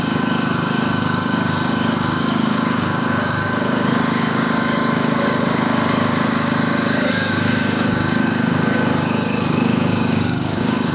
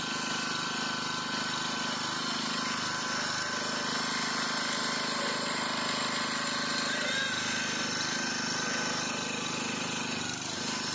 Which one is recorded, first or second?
second